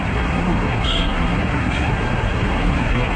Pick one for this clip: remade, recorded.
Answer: remade